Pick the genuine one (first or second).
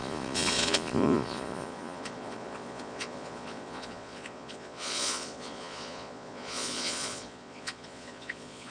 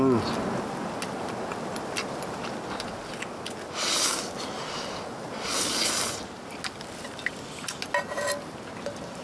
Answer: second